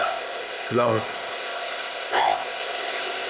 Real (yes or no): no